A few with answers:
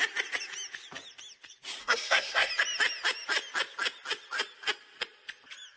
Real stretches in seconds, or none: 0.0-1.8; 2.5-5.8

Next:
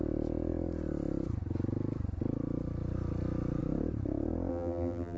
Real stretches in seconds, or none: 0.0-4.5

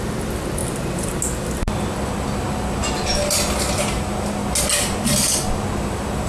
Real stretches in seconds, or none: 0.0-6.3

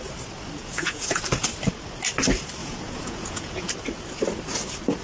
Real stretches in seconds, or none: 0.0-0.6; 1.2-2.6; 3.7-5.0

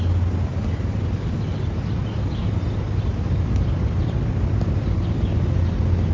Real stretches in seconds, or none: 0.0-6.1

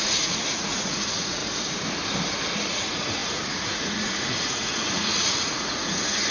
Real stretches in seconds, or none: 1.4-2.7

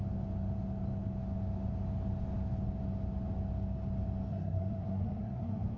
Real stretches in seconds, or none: 0.0-4.3